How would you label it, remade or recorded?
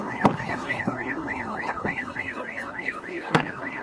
remade